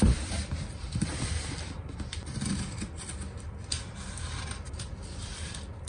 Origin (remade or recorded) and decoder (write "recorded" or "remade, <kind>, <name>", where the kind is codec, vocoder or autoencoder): remade, vocoder, BigVGAN v2